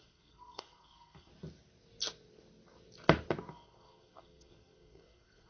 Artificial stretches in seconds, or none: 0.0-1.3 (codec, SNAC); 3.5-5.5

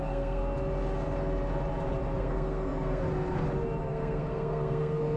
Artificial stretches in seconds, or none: 0.0-0.4 (codec, SNAC); 2.2-3.0; 3.8-5.2

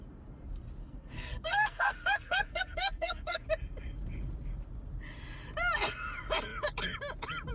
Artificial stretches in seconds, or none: 0.8-3.5 (codec, SNAC)